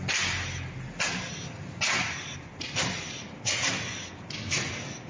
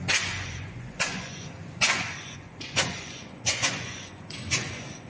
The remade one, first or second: second